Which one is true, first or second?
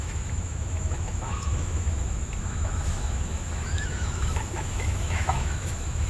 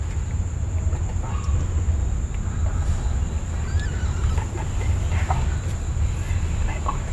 second